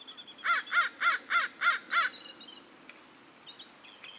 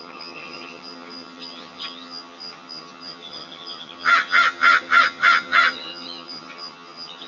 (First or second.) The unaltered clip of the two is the first